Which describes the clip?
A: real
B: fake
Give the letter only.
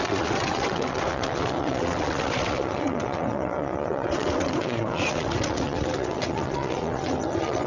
B